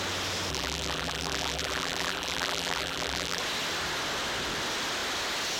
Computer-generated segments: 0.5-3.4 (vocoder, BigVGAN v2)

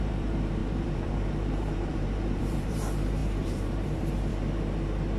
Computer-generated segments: 0.0-4.3 (vocoder, BigVGAN v2)

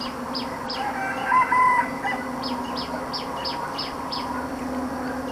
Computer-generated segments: none

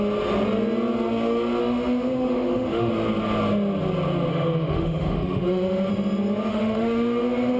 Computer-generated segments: 1.6-2.9 (autoencoder, DAC-VAE); 4.3-5.9; 6.5-7.6

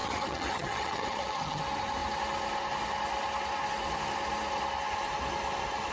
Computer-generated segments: 0.0-1.6 (vocoder, HiFi-GAN)

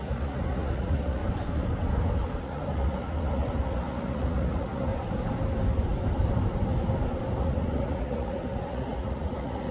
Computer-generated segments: 0.0-1.2 (vocoder, Vocos); 2.4-4.9; 7.4-9.7